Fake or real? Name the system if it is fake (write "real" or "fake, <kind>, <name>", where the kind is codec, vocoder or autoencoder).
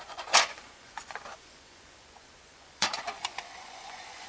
fake, vocoder, Vocos